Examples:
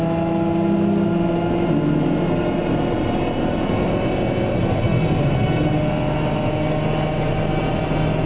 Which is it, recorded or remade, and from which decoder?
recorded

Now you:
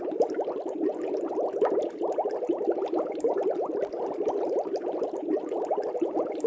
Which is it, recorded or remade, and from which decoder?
recorded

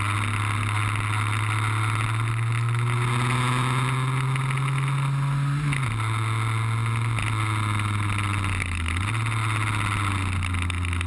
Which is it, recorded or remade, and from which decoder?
recorded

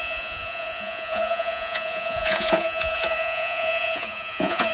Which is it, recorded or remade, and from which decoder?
remade, vocoder, Vocos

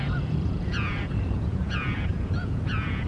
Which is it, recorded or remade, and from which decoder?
remade, vocoder, Vocos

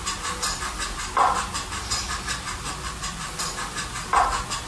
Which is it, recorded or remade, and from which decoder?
recorded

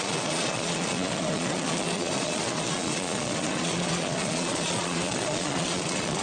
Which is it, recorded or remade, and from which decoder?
remade, vocoder, Vocos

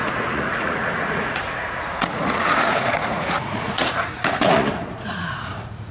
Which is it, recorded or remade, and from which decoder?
remade, vocoder, Vocos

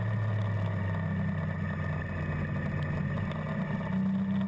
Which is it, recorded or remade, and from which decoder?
recorded